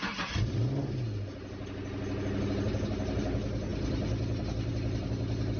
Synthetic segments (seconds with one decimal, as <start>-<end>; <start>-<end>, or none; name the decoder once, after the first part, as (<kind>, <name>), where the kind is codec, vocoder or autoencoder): none